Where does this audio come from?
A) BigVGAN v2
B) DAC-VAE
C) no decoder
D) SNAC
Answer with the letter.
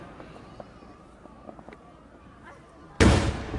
C